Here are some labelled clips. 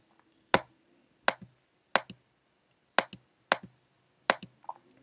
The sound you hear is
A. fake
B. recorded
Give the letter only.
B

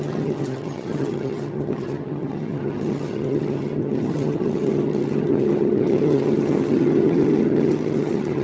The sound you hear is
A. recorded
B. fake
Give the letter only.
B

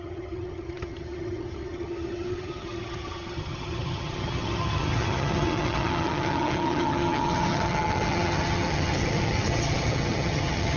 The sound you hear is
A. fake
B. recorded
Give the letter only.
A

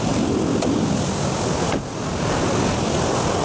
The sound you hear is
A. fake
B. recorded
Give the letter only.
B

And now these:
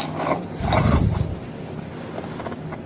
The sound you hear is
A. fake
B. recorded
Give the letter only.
B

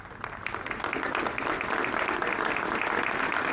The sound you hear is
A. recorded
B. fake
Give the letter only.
A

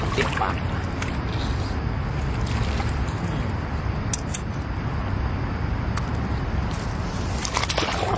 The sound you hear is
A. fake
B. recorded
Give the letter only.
B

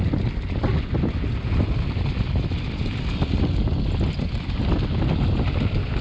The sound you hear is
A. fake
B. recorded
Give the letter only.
B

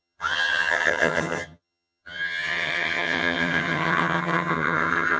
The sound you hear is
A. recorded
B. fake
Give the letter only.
B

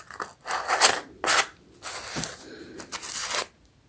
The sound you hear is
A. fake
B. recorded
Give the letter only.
B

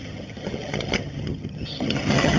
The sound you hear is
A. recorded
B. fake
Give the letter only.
B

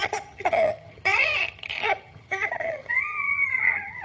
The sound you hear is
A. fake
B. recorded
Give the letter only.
A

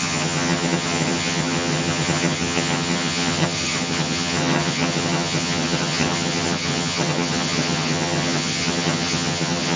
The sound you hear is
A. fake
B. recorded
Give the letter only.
A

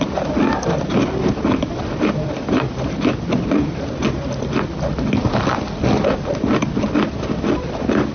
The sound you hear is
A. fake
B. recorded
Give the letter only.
B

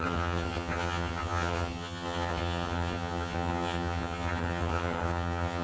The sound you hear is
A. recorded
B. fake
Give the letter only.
B